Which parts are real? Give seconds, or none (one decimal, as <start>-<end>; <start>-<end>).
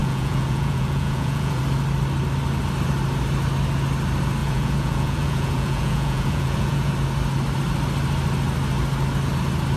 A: 1.6-4.4; 6.9-9.8